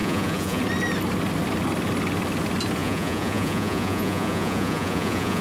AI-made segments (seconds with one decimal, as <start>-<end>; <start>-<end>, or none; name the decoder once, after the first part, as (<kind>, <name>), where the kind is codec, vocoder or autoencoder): 0.0-0.6 (vocoder, Vocos); 2.8-5.4